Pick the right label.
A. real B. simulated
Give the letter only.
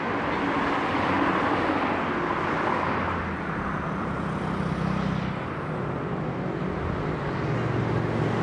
A